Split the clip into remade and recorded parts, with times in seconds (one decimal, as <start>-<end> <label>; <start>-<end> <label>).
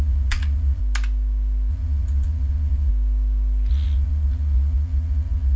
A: 0.0-0.8 remade; 0.8-1.7 recorded; 1.7-2.9 remade; 2.9-3.7 recorded; 3.7-5.6 remade